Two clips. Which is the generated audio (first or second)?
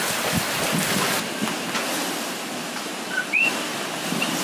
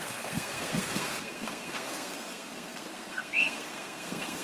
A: second